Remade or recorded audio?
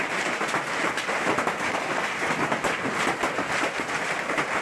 recorded